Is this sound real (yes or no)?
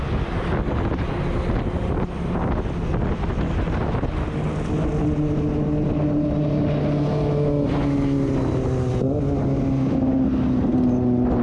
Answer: yes